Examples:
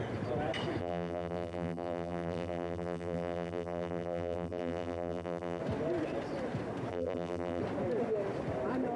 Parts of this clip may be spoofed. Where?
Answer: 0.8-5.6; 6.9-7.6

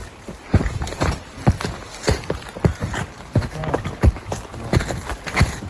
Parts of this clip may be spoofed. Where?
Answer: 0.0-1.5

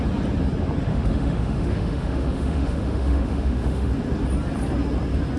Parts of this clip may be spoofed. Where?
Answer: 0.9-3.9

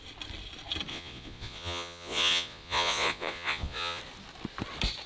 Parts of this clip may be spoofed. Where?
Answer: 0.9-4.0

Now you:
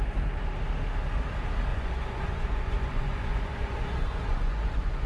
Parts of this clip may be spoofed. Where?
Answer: 1.7-5.1

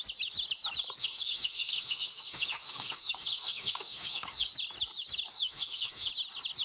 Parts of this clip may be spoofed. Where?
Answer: 1.0-4.5; 5.3-6.1

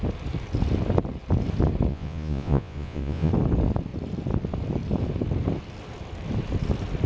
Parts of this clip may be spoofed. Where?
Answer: 1.9-3.3

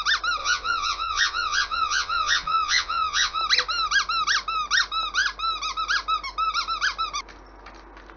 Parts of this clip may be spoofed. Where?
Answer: 0.4-3.4